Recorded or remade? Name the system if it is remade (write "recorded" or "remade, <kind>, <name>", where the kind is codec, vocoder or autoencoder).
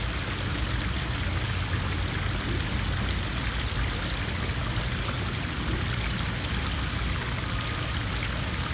recorded